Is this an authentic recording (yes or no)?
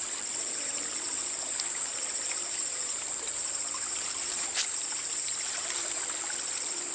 no